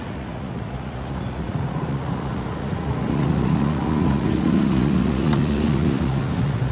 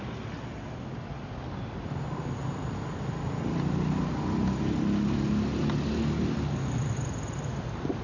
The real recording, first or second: second